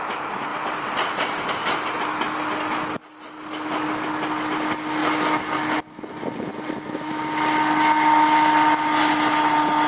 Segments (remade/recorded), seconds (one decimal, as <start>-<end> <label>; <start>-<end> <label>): 0.0-9.9 recorded